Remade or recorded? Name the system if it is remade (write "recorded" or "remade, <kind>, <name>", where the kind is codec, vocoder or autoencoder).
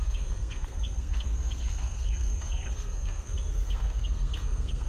remade, codec, SNAC